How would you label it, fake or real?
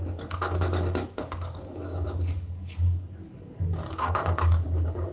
fake